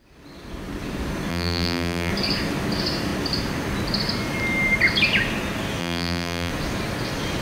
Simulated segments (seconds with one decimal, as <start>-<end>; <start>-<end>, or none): 1.3-2.1; 5.8-6.5